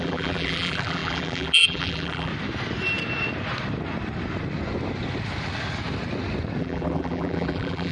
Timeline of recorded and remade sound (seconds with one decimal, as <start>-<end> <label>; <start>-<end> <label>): 0.0-2.3 remade; 2.3-6.6 recorded; 6.6-7.9 remade